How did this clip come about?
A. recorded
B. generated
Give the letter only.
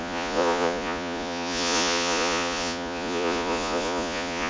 B